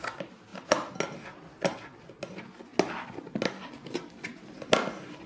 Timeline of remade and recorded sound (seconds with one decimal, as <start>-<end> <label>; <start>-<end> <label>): 0.0-5.3 recorded